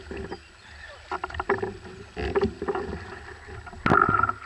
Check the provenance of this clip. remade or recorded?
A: recorded